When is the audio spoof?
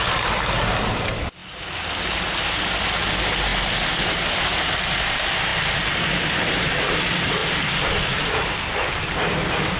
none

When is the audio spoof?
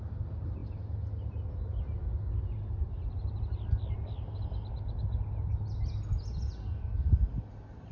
none